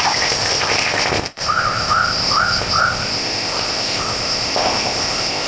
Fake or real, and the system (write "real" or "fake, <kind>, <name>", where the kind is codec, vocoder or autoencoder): fake, codec, ZipCodec